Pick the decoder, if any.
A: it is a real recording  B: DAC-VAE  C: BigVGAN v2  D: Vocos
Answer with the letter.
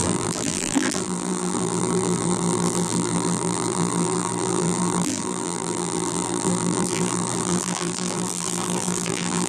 C